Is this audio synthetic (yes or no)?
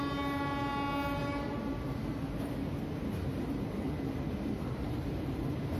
no